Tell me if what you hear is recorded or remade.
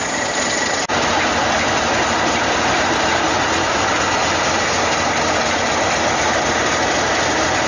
recorded